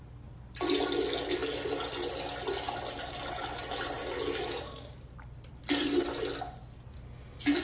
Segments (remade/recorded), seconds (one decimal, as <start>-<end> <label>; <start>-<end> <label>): 0.0-7.6 recorded